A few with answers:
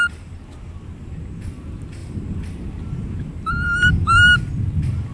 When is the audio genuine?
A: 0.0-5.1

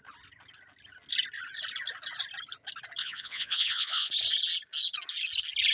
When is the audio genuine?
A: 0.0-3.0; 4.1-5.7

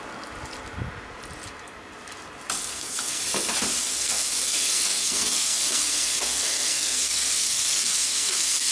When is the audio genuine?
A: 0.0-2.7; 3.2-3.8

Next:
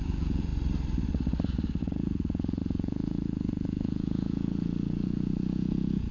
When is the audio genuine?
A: 0.5-1.8

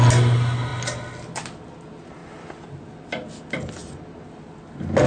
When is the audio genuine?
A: 0.0-5.1

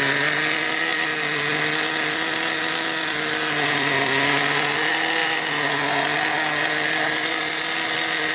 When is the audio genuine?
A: 0.0-8.3

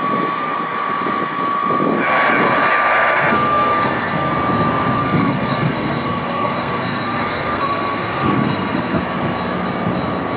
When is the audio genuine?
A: 0.0-3.1; 4.3-5.0; 9.0-10.4